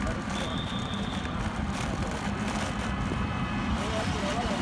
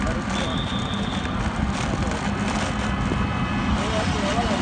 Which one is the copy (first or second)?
first